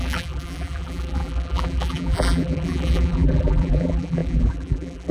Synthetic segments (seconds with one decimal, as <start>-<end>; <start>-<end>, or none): 0.0-5.1